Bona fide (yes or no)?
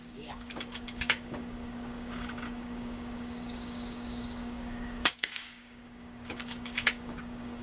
no